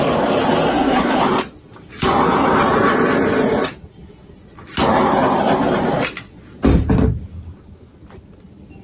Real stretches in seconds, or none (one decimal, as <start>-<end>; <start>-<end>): 0.0-0.7; 1.2-8.8